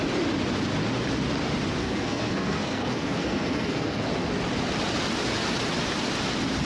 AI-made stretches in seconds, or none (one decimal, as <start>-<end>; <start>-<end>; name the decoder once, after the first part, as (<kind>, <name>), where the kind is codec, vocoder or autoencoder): 1.8-4.1 (codec, SNAC)